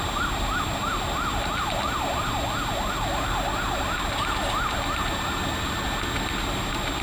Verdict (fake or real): real